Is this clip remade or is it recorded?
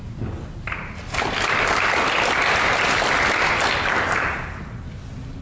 recorded